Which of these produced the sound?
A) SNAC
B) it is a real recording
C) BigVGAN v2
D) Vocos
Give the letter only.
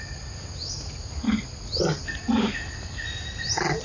B